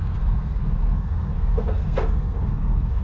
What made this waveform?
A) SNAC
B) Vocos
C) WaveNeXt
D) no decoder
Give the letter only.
A